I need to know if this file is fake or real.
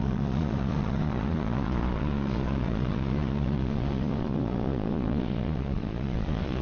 fake